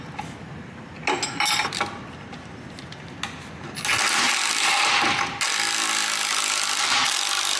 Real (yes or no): yes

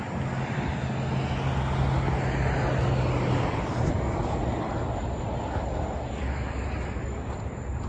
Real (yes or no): yes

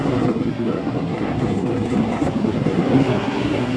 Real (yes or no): no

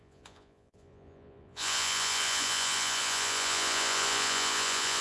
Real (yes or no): no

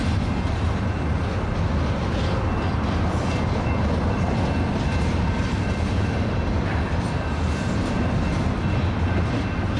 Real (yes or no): yes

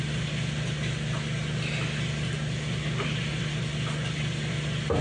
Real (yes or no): yes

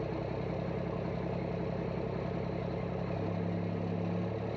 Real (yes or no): yes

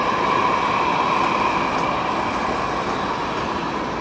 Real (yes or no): yes